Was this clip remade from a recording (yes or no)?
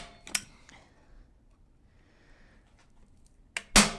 no